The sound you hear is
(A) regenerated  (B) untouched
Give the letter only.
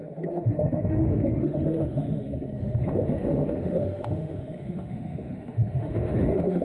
A